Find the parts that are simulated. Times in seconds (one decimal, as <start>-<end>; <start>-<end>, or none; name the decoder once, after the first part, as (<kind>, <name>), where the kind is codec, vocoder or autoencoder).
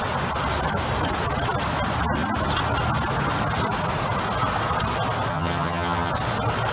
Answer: 5.3-6.1 (vocoder, HiFi-GAN)